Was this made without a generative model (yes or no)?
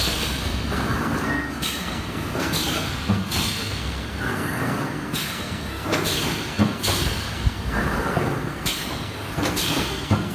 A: no